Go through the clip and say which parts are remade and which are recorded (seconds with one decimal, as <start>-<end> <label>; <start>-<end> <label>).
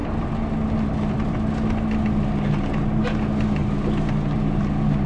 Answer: 0.0-5.1 recorded